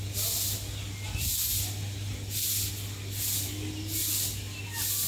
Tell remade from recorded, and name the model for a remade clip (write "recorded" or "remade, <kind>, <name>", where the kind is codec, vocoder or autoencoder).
recorded